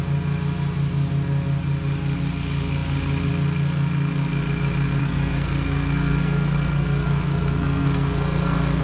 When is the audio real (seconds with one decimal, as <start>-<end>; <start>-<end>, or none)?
0.0-5.0